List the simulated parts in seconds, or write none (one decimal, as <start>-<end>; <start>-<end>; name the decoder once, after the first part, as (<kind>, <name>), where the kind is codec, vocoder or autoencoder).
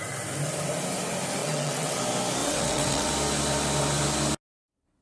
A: 1.4-2.0 (vocoder, WaveNeXt); 2.4-3.1